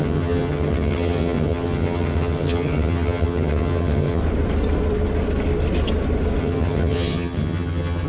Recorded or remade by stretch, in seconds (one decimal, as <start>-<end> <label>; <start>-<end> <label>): 0.0-4.2 remade; 4.2-6.4 recorded; 6.4-8.1 remade